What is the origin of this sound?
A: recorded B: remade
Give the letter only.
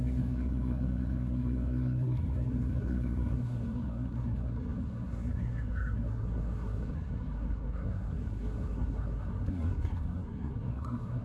B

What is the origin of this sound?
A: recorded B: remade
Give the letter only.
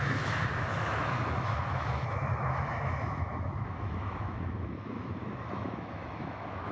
B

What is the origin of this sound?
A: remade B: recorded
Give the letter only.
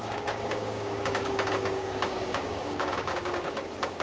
A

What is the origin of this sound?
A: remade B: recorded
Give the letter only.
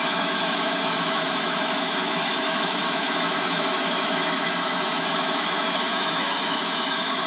A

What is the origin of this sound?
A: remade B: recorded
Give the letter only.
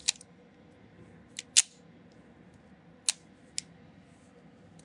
B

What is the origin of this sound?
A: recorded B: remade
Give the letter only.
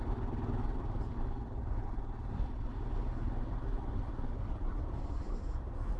A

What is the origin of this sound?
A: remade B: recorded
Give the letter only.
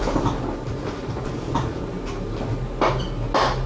B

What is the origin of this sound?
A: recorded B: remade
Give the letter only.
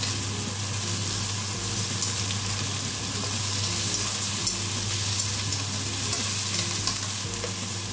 A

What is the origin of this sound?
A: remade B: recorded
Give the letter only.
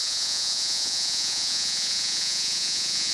A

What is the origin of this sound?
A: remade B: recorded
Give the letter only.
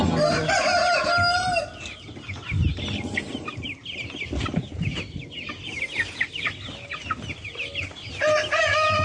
B